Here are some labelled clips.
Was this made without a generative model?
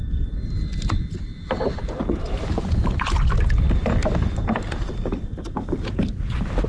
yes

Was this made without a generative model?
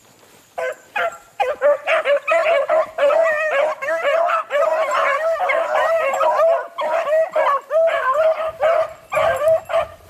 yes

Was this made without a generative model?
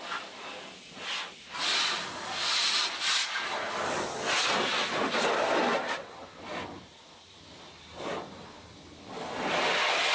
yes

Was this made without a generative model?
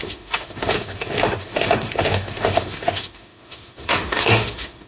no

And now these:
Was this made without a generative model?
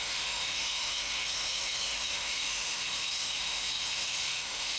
no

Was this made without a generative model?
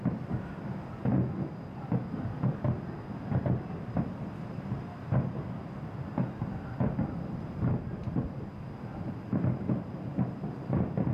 yes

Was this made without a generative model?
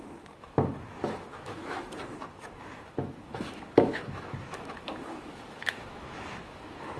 no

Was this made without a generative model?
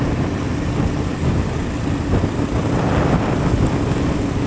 yes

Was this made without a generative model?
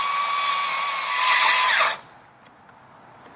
yes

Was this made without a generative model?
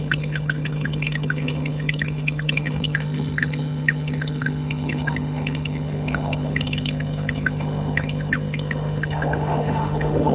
no